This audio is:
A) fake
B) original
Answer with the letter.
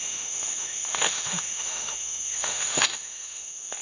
A